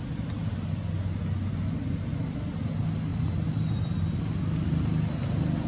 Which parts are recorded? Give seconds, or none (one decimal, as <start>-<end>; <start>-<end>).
0.0-5.7